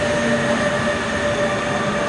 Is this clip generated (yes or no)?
no